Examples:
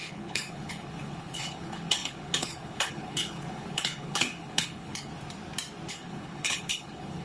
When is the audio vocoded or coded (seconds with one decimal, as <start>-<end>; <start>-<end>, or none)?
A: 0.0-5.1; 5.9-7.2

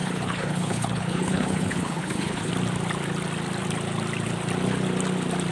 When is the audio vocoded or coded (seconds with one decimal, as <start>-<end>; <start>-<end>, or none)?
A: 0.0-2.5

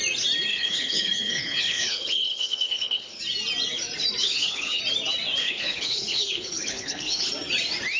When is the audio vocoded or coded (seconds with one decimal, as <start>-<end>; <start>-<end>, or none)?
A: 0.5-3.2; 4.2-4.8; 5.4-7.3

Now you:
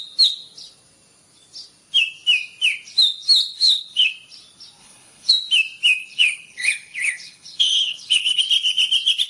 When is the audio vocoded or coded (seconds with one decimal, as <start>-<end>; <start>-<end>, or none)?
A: 3.5-4.1; 4.8-5.3; 6.0-8.4

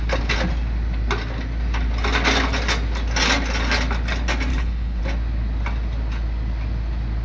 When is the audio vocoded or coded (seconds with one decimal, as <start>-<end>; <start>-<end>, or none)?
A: 4.5-5.0

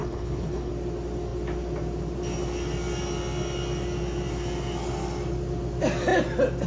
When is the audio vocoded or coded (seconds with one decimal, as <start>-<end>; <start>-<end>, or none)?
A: 0.0-0.7